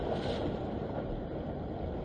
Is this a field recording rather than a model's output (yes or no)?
yes